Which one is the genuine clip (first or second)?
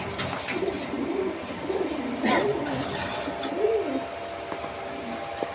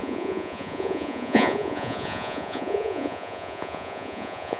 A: first